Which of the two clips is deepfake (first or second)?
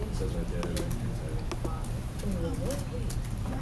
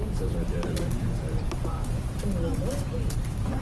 second